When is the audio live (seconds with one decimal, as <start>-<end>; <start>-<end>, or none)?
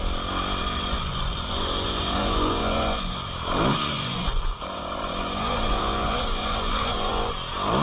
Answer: 0.0-0.6; 3.3-3.7; 7.3-7.8